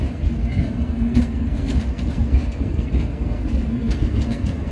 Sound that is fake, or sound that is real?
fake